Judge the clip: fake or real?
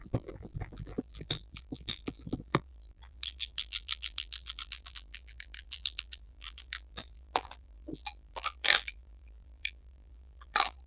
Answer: fake